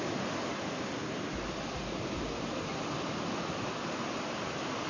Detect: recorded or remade recorded